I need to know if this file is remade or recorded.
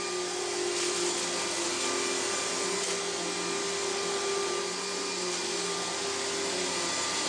recorded